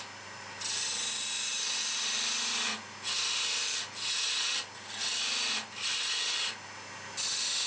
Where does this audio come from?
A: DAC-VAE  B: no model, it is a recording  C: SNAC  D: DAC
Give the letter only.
B